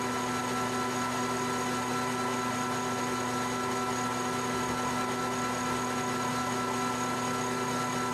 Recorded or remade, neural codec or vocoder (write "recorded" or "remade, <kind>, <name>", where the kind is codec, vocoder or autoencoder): recorded